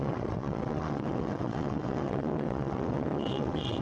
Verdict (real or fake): fake